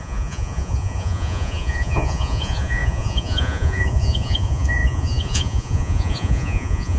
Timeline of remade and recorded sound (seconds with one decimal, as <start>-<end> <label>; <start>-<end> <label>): 0.0-7.0 remade

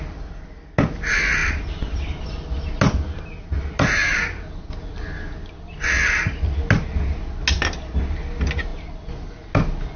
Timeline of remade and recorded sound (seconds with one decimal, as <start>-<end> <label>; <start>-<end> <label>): 0.0-10.0 recorded